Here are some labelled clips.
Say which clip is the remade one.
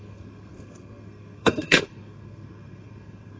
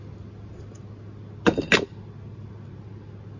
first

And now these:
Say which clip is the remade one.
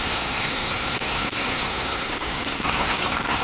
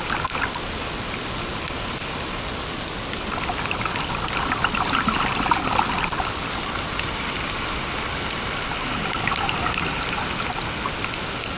first